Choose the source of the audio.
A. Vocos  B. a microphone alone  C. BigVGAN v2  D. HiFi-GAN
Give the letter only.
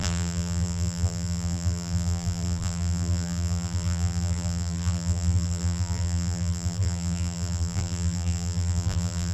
C